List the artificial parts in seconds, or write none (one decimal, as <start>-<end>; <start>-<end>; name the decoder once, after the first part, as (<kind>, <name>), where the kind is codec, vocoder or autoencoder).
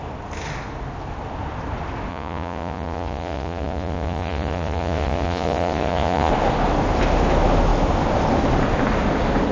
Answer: 2.1-6.3 (vocoder, Vocos)